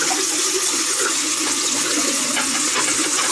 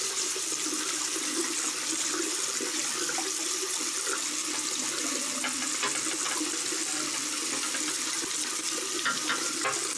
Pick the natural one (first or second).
second